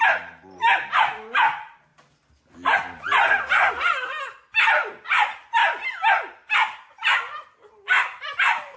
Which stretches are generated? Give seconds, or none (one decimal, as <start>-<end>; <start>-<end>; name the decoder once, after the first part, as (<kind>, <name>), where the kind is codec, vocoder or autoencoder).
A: none